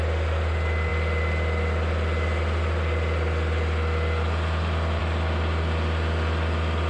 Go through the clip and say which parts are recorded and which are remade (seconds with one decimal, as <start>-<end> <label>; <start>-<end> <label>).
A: 0.0-0.9 recorded; 0.9-5.0 remade; 5.0-6.9 recorded